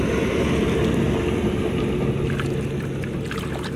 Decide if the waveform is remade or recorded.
recorded